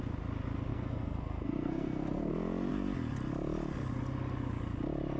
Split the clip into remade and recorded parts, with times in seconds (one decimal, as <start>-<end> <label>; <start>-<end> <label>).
0.0-0.7 recorded; 0.7-2.3 remade; 2.3-5.2 recorded